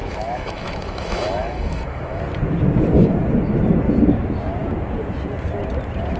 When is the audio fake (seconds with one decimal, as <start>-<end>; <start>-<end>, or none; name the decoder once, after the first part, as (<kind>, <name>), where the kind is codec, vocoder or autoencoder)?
0.0-2.2 (autoencoder, DAC-VAE)

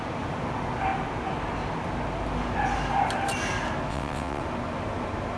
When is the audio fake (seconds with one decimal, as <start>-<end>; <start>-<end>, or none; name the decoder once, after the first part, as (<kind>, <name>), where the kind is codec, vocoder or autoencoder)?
3.9-4.4 (vocoder, WaveNeXt)

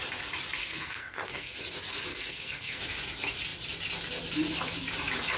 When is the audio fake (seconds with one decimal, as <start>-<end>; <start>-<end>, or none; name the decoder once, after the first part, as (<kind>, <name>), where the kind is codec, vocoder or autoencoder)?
0.6-1.6 (codec, SNAC); 2.1-2.8

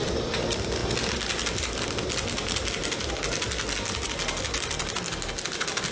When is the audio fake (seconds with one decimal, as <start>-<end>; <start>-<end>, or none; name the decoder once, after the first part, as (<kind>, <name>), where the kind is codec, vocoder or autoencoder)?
none